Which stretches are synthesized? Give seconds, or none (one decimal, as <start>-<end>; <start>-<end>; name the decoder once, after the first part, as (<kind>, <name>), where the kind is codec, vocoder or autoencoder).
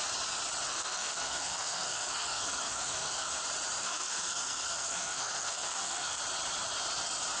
0.7-3.3 (codec, SNAC); 3.8-6.2